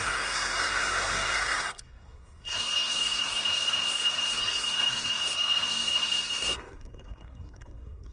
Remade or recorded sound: remade